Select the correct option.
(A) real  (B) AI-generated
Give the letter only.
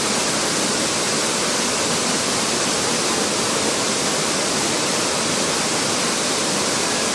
B